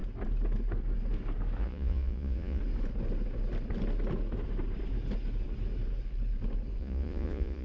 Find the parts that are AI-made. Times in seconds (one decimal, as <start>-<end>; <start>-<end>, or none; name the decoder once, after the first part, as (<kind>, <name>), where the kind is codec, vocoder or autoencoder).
1.6-2.6 (vocoder, Vocos); 6.8-7.6